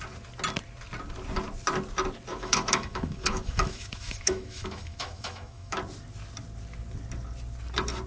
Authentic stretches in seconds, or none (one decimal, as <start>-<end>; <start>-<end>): 0.0-2.3; 5.8-8.1